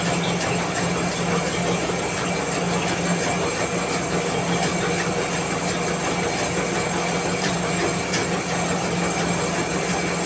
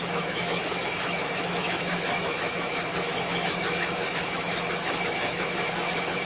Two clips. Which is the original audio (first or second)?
first